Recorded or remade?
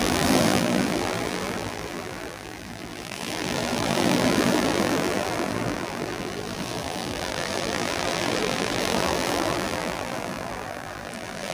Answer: remade